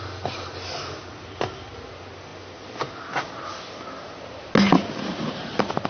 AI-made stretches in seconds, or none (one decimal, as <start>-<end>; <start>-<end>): none